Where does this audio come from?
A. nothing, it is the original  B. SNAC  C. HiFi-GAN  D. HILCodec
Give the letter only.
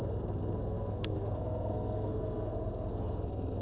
B